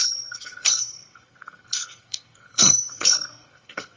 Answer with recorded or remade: remade